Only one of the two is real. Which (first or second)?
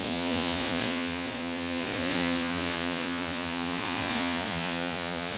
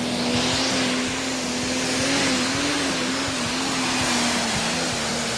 second